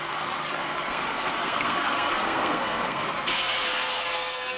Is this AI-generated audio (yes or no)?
yes